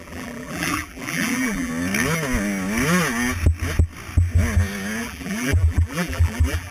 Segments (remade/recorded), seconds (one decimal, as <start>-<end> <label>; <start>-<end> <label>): 0.0-1.7 remade; 1.7-5.0 recorded; 5.0-6.7 remade